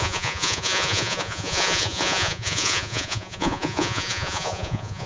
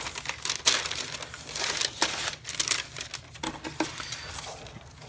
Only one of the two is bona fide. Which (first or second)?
second